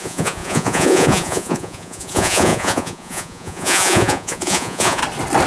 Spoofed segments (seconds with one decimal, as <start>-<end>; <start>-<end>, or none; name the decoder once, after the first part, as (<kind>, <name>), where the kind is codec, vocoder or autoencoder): 0.0-5.0 (vocoder, Vocos)